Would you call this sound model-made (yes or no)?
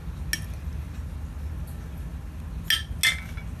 no